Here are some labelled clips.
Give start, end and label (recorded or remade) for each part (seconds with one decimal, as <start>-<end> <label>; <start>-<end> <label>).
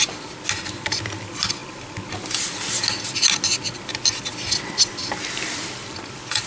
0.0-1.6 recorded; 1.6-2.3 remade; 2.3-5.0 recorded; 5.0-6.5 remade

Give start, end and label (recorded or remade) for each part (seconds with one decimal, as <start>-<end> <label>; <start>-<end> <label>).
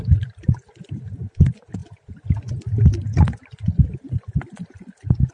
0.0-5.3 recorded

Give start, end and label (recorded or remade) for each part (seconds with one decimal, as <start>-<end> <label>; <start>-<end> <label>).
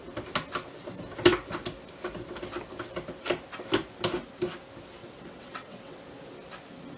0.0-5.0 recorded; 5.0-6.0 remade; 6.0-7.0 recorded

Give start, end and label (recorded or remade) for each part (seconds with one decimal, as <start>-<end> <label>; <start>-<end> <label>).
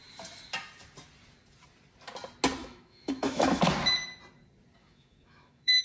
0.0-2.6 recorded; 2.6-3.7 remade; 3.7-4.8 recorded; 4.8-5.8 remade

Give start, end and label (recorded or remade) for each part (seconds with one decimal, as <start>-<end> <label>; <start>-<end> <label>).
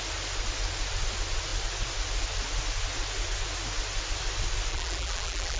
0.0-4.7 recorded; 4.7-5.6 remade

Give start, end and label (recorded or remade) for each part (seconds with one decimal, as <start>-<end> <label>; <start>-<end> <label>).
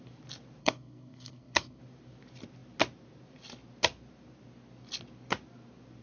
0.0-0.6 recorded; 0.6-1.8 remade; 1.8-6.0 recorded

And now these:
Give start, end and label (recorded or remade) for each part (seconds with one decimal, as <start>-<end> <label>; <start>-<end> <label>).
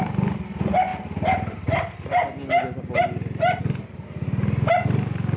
0.0-5.4 recorded